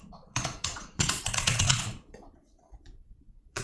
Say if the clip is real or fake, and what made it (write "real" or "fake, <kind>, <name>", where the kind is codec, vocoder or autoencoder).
fake, vocoder, Vocos